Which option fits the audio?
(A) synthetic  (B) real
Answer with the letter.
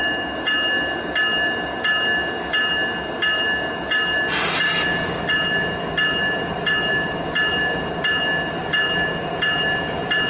B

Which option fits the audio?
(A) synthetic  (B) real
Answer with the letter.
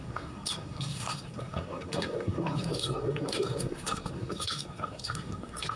A